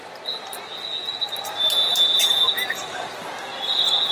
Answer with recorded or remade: recorded